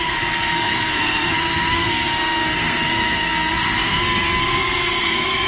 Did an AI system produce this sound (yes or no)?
yes